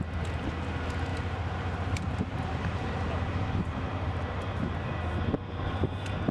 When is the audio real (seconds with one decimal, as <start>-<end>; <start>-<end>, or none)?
0.0-1.1; 4.9-6.3